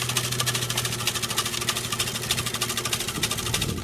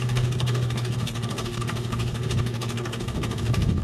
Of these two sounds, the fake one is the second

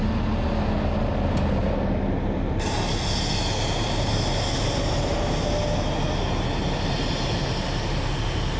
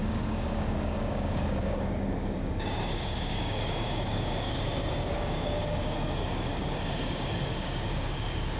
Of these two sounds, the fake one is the second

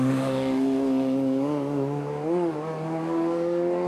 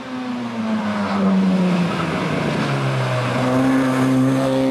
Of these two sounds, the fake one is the first